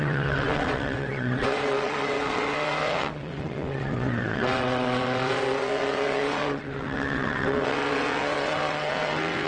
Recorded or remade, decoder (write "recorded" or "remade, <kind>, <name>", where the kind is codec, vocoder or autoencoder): remade, vocoder, WaveNeXt